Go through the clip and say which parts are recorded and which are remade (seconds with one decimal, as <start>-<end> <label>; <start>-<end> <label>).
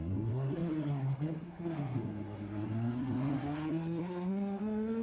0.0-5.0 remade